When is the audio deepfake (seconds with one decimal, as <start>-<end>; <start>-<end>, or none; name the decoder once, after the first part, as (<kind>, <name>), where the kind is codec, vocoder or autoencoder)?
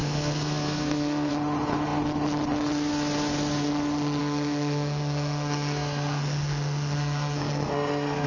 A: 0.0-1.3 (codec, SNAC); 4.2-8.3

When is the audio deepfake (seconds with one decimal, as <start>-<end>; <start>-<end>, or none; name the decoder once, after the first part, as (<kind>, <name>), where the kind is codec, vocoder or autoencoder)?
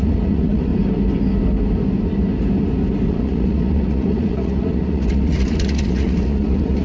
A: 0.0-0.7 (vocoder, Vocos); 3.1-6.8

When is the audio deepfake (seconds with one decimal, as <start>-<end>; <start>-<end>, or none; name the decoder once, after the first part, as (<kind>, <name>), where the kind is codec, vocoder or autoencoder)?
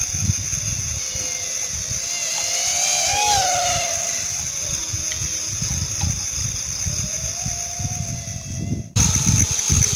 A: 4.8-5.7 (vocoder, BigVGAN v2)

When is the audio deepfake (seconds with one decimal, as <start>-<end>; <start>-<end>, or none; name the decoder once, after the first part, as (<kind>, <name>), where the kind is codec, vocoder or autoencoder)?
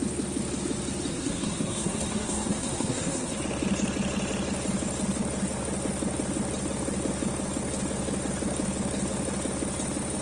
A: 1.1-3.4 (codec, SNAC)